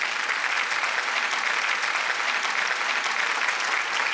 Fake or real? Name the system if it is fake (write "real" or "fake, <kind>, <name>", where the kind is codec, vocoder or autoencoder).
real